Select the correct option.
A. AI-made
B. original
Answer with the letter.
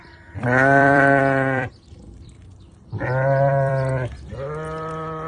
A